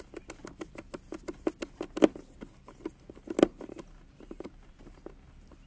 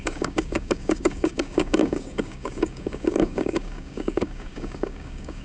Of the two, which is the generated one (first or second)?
second